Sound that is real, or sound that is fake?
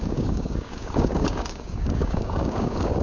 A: fake